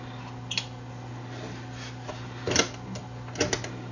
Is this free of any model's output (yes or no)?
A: yes